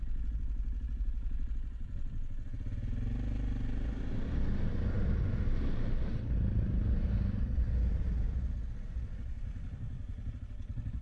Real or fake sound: real